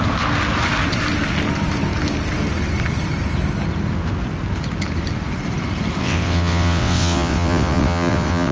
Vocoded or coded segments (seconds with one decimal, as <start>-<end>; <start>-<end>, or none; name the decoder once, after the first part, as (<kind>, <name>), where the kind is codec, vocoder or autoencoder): 6.0-8.5 (vocoder, WaveNeXt)